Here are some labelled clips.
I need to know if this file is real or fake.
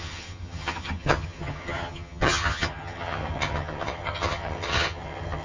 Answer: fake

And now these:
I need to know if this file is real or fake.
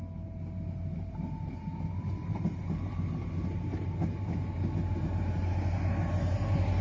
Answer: real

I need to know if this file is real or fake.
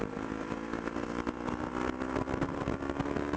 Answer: real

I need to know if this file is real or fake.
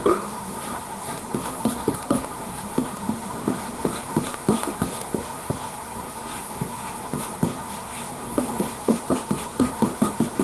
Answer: fake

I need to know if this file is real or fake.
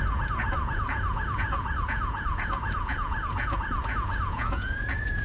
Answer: fake